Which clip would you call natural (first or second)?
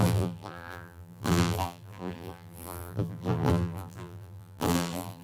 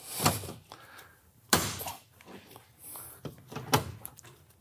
second